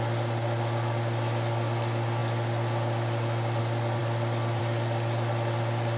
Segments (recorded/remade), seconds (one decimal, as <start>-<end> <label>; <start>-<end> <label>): 0.0-6.0 recorded